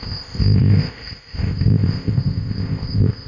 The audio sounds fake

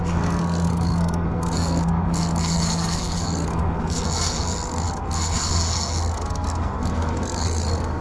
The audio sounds fake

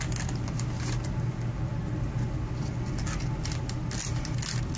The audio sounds real